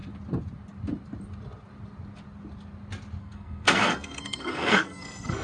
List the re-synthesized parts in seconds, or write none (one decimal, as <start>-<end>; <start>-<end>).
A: 3.2-5.4